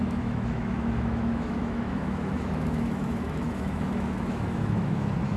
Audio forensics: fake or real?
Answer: fake